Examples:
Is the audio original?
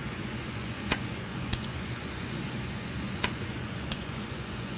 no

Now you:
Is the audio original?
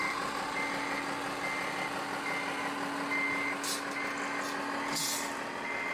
yes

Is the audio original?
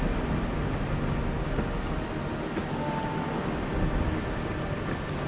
yes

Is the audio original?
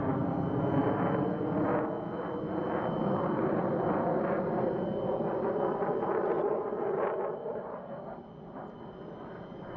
yes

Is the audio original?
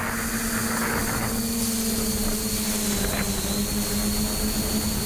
yes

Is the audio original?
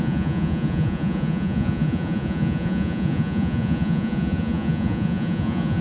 no